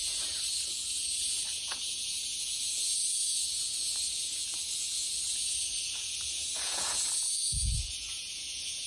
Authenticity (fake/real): fake